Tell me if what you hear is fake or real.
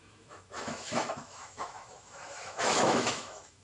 fake